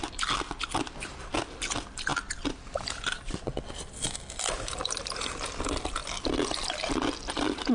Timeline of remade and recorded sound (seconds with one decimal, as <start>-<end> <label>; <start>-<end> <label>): 0.0-7.7 recorded